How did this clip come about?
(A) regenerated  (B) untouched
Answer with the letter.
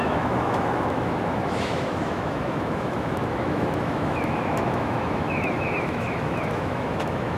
A